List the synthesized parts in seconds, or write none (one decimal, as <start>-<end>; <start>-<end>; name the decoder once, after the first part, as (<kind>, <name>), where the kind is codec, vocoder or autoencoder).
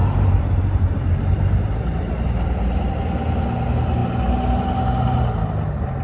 0.0-2.9 (vocoder, BigVGAN v2)